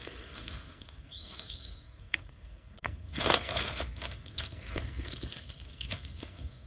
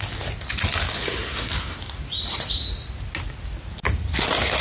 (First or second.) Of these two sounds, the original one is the second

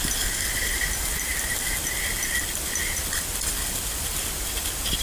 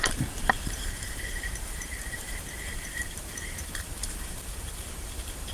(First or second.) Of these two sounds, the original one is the first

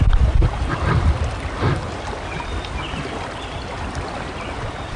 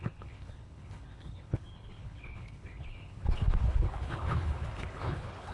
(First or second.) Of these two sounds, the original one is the first